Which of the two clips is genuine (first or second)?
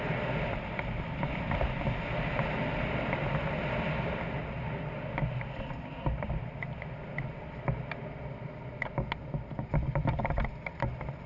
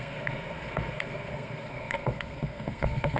first